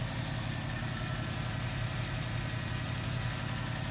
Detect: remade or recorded recorded